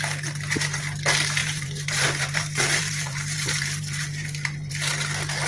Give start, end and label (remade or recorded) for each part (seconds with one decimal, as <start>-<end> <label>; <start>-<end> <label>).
0.0-1.4 recorded; 1.4-4.7 remade; 4.7-5.5 recorded